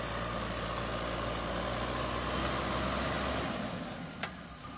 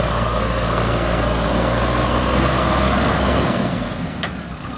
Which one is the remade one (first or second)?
second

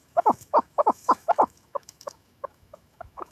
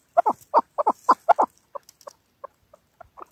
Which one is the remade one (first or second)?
first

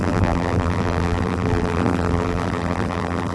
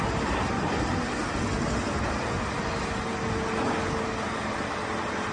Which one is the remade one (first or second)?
first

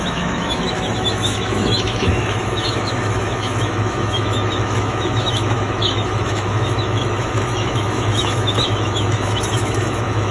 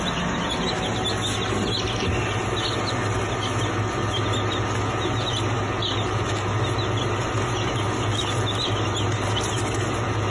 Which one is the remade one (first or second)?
first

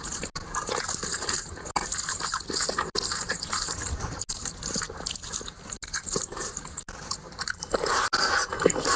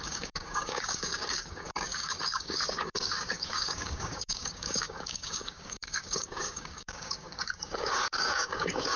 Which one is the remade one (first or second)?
second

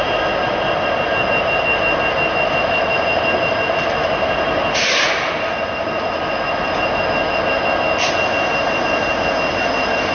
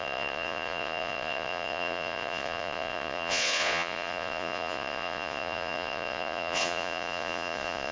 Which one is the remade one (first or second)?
second